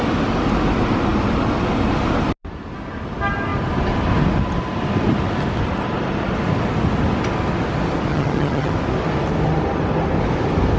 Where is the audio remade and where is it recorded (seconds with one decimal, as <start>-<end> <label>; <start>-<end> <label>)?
0.0-8.1 recorded; 8.1-8.7 remade; 8.7-10.8 recorded